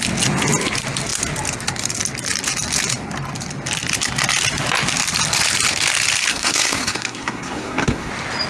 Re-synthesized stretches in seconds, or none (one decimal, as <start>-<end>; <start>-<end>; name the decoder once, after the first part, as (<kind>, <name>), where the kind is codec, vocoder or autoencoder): 6.3-8.1 (codec, SNAC)